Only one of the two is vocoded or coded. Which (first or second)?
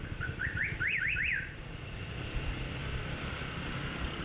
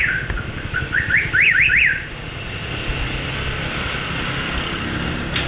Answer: first